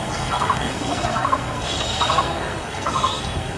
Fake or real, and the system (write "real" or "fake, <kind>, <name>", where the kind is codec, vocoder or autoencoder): fake, codec, SNAC